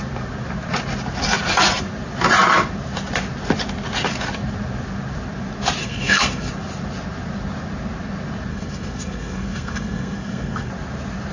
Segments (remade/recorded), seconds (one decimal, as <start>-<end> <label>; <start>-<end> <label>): 0.0-5.8 recorded; 5.8-6.5 remade; 6.5-8.5 recorded; 8.5-10.7 remade; 10.7-11.3 recorded